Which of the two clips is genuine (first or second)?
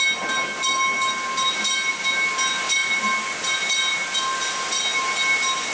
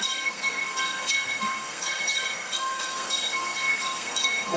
first